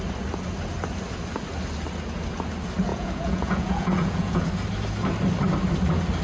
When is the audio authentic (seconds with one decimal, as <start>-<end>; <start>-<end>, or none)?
0.0-2.9; 4.5-6.2